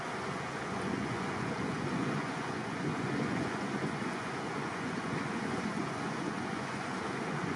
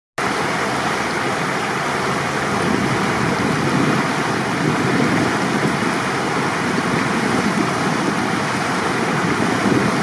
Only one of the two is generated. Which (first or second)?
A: first